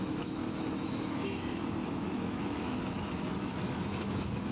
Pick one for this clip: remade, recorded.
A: remade